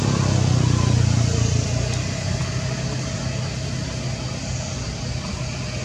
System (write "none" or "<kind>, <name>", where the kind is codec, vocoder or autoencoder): none